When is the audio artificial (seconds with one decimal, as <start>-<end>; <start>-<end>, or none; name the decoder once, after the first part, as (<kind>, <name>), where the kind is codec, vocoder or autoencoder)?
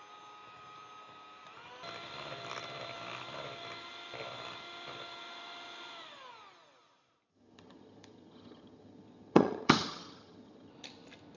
7.3-10.7 (vocoder, HiFi-GAN)